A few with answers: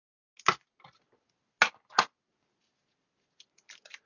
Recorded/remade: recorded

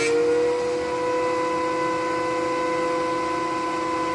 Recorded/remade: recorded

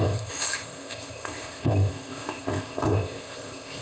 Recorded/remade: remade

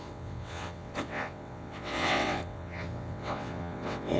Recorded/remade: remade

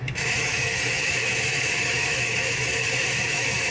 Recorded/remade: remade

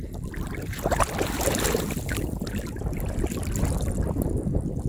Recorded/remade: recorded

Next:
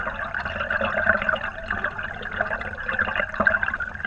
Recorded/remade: recorded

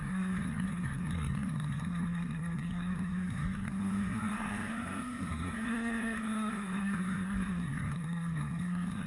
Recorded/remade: remade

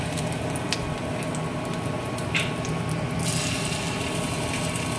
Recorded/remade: recorded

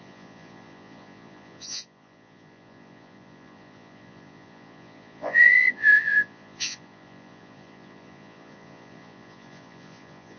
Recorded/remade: remade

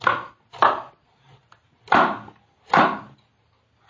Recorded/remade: recorded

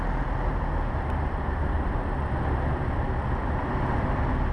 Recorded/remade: recorded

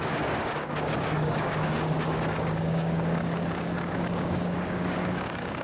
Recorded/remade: remade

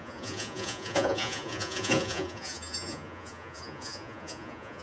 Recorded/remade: remade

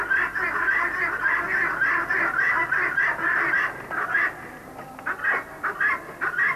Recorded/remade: recorded